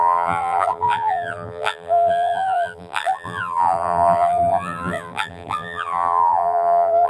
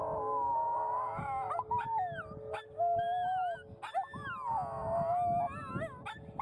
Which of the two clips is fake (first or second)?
first